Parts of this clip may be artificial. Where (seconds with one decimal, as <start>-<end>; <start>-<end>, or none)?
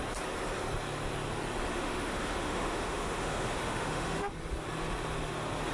1.7-4.3